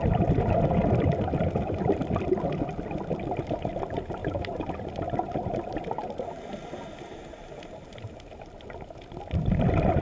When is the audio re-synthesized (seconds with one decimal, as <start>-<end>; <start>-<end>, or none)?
4.2-4.7